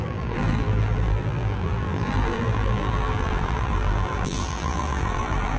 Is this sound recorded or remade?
remade